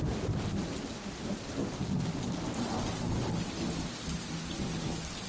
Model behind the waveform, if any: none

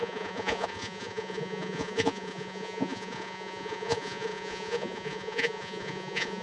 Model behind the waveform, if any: vocoder, Vocos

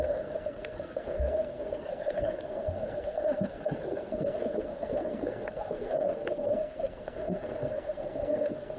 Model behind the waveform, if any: codec, SNAC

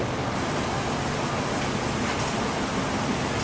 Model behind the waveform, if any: none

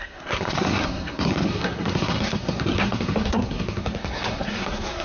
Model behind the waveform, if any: codec, SNAC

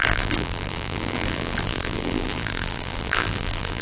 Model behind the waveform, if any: vocoder, BigVGAN v2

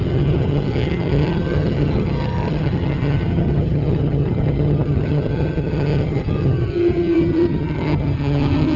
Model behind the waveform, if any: vocoder, HiFi-GAN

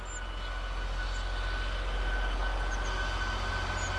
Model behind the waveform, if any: none